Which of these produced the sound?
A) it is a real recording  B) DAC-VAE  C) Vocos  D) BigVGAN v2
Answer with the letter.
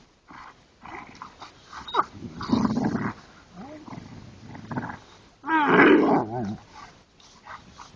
A